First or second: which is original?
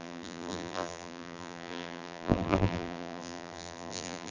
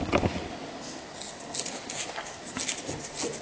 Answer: second